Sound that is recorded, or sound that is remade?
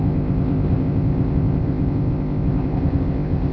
remade